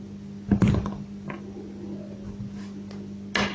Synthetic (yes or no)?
no